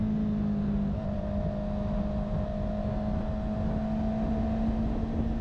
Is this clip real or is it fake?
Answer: real